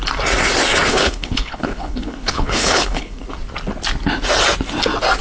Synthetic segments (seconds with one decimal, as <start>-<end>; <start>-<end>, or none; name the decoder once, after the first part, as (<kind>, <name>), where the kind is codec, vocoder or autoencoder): 0.9-3.2 (codec, HILCodec)

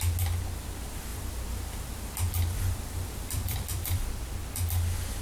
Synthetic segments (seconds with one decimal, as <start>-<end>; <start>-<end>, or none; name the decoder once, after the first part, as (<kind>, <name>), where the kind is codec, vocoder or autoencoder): 1.1-4.2 (vocoder, BigVGAN v2)

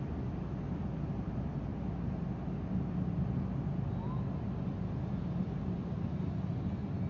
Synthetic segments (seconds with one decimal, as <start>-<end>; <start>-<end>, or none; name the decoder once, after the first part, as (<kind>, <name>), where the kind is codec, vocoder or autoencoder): none

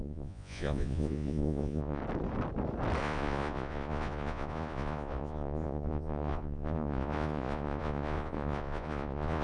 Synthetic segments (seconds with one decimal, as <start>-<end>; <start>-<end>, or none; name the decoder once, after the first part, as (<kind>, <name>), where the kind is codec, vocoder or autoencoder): 0.0-2.0 (vocoder, Vocos); 3.0-9.4

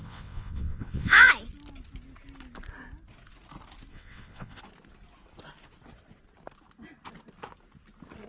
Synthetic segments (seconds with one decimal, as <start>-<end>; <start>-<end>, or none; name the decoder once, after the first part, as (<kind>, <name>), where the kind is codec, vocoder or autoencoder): 0.0-1.3 (vocoder, WaveNeXt); 3.9-4.6

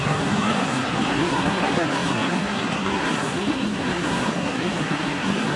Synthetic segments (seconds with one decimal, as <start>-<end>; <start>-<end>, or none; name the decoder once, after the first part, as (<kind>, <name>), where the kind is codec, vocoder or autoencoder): 0.0-5.6 (codec, SNAC)

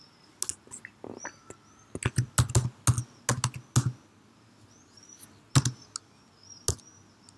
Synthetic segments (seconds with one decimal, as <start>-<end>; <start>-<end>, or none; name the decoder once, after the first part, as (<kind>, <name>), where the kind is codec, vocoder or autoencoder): none

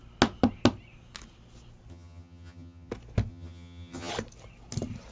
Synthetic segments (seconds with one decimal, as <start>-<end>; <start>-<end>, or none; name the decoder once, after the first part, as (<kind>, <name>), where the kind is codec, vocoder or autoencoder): 1.9-2.9 (vocoder, HiFi-GAN); 3.3-4.1